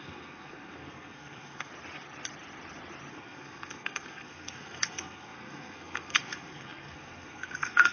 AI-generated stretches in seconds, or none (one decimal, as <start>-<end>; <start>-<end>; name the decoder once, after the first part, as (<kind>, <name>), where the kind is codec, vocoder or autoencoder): 0.0-1.7 (codec, SNAC); 3.1-7.9